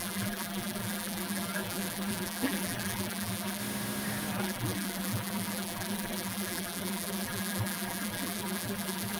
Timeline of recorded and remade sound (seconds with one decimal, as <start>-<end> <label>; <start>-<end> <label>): 0.0-3.6 remade; 3.6-4.3 recorded; 4.3-9.2 remade